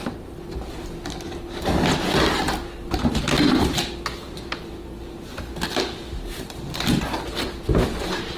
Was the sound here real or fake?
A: real